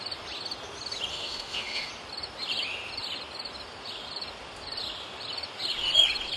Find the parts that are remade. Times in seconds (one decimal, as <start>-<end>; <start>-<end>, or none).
1.1-1.9